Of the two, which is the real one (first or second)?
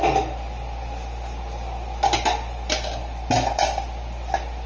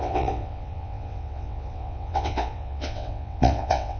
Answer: first